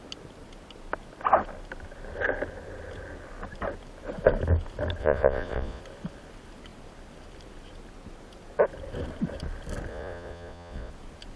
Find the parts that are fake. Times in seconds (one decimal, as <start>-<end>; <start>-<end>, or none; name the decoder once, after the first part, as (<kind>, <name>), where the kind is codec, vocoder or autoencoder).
5.0-5.8 (vocoder, Vocos); 9.9-10.9